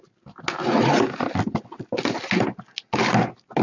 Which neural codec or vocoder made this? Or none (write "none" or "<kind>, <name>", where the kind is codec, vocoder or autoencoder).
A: none